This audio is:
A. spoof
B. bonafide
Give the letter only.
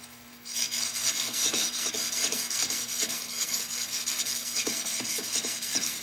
A